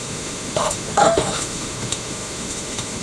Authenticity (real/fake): fake